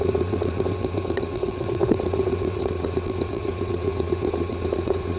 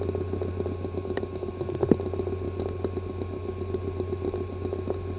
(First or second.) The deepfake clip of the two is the first